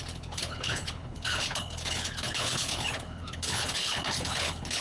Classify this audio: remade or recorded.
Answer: remade